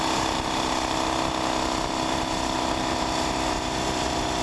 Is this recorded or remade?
recorded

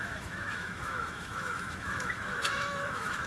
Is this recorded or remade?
remade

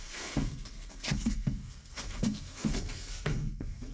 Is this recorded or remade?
remade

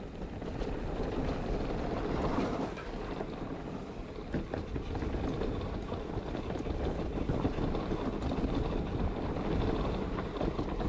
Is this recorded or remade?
recorded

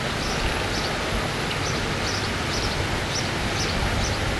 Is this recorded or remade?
recorded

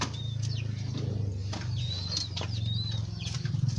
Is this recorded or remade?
recorded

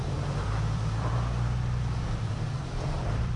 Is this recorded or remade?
remade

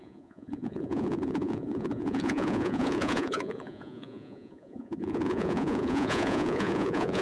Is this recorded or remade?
remade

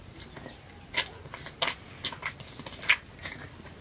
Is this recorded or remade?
recorded